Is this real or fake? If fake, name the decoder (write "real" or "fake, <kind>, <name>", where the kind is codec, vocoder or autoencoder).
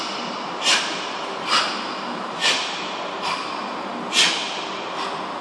real